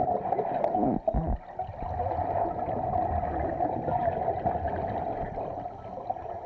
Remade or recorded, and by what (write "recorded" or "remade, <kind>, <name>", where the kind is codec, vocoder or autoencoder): recorded